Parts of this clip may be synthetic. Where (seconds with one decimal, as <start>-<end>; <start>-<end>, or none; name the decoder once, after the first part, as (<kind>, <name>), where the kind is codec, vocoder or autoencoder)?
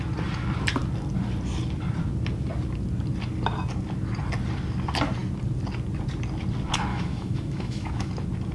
6.9-8.1 (autoencoder, DAC-VAE)